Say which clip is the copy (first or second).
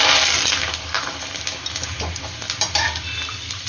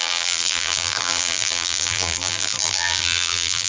second